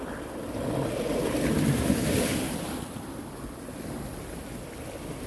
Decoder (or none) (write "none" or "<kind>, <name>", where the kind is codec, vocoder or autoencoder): none